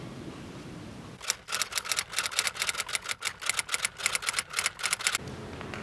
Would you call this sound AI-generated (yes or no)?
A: no